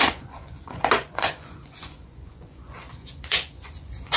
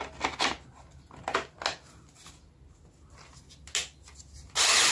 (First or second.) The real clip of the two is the second